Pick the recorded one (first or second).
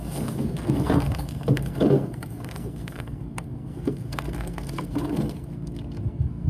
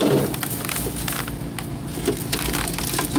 second